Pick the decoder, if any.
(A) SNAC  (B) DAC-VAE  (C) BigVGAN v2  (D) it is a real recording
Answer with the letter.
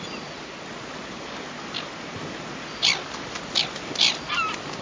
C